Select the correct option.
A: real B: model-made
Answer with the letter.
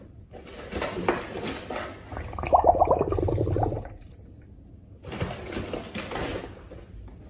A